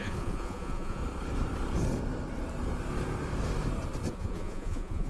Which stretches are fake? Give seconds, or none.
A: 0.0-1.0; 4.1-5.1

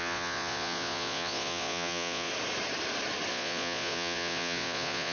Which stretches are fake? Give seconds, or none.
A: 0.0-2.3; 3.3-5.1

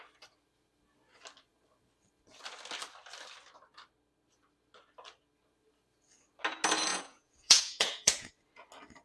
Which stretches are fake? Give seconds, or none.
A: 6.9-8.3

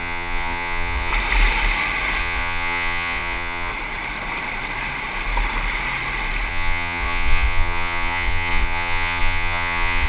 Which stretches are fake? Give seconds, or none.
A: 0.0-1.1; 2.2-3.7; 6.5-10.1

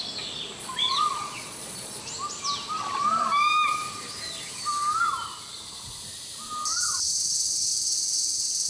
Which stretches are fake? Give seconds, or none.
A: 0.6-2.0

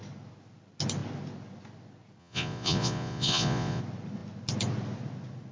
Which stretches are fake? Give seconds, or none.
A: 2.2-3.8